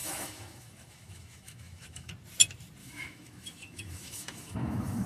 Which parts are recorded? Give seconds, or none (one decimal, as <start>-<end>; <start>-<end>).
2.1-2.8